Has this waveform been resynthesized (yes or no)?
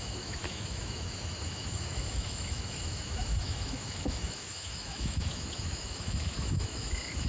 yes